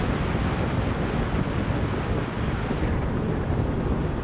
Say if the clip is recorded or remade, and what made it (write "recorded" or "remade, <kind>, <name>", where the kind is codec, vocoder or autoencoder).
recorded